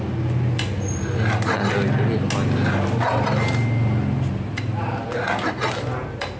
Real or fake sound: real